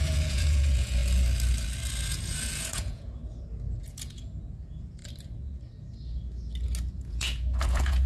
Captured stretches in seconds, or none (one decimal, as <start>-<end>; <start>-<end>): 1.0-2.1; 3.2-3.8; 5.0-6.9

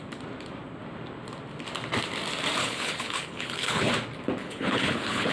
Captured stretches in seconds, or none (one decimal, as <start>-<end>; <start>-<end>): 0.0-2.6; 3.9-4.4

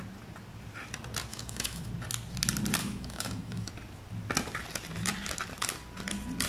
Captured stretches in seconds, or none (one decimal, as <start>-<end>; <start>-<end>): 0.0-1.3; 1.9-2.8; 3.7-6.5

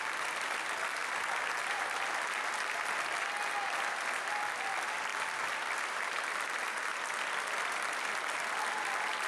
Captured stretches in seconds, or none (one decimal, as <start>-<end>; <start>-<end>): 0.0-9.3